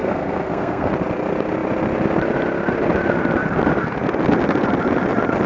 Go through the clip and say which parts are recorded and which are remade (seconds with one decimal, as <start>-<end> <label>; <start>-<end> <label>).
0.0-0.9 remade; 0.9-5.5 recorded